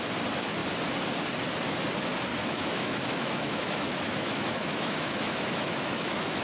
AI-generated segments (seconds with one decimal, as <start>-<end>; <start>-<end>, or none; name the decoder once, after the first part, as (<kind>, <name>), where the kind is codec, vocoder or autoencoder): 2.3-6.4 (autoencoder, DAC-VAE)